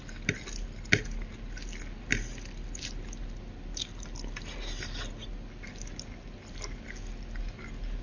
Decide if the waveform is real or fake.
real